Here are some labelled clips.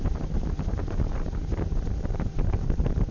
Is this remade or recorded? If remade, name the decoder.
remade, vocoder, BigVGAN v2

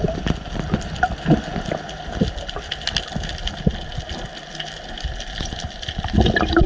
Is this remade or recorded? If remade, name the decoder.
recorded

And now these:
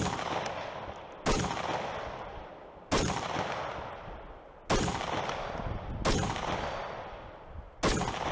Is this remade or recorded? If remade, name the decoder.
recorded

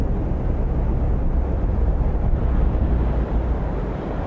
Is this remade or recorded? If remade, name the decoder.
recorded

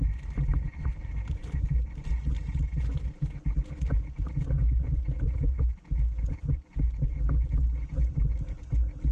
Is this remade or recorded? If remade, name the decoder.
recorded